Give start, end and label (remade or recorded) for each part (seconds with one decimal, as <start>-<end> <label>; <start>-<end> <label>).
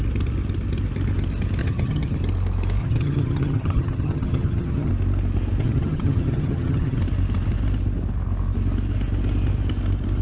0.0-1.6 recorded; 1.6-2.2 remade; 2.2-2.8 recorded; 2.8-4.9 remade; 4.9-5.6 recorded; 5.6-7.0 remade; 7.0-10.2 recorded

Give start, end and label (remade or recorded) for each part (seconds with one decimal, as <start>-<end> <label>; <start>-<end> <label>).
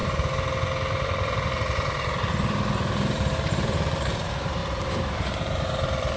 0.0-6.2 remade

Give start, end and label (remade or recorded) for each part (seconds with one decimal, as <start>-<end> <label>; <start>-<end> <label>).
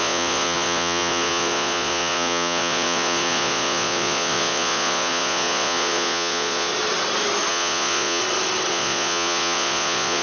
0.0-6.7 remade; 6.7-7.5 recorded; 7.5-8.2 remade; 8.2-8.7 recorded; 8.7-10.2 remade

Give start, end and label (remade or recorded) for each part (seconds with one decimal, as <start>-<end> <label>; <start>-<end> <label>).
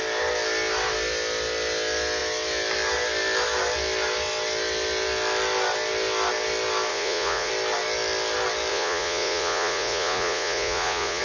0.0-6.9 recorded; 6.9-7.5 remade; 7.5-8.7 recorded; 8.7-11.2 remade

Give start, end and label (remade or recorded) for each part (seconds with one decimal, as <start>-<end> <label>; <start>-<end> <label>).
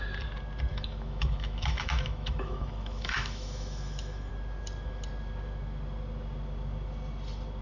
0.0-0.7 recorded; 0.7-4.3 remade; 4.3-7.6 recorded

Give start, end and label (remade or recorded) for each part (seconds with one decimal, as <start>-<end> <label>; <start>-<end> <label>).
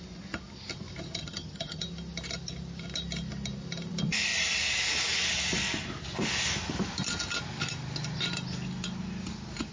0.0-1.2 recorded; 1.2-1.8 remade; 1.8-9.7 recorded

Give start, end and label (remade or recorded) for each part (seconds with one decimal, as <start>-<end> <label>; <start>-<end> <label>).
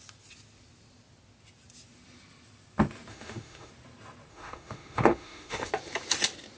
0.0-3.1 recorded; 3.1-3.7 remade; 3.7-4.3 recorded; 4.3-5.7 remade; 5.7-6.6 recorded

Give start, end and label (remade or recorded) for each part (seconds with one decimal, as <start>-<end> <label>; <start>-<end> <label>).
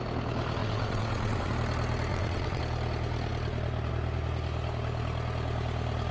0.0-0.6 recorded; 0.6-1.5 remade; 1.5-2.1 recorded; 2.1-2.6 remade; 2.6-6.1 recorded